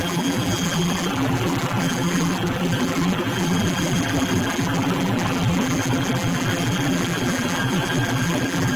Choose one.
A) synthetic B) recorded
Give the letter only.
A